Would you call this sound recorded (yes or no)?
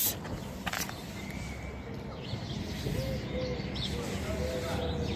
yes